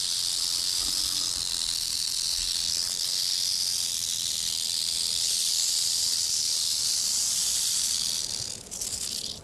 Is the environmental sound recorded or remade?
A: recorded